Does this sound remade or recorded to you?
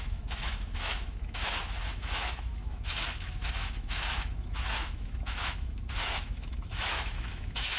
remade